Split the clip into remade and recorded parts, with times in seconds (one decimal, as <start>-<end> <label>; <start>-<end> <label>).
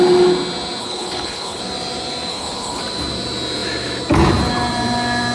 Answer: 0.0-0.8 recorded; 0.8-1.6 remade; 1.6-2.3 recorded; 2.3-2.8 remade; 2.8-5.3 recorded